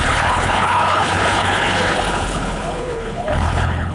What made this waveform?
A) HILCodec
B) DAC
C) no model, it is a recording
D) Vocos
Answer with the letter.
A